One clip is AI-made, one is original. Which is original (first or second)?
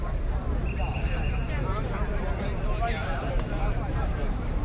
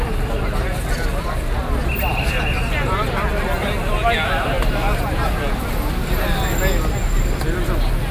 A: second